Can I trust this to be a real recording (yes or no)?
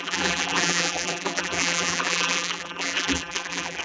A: no